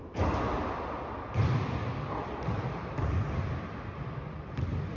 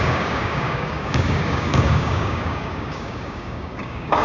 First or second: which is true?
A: first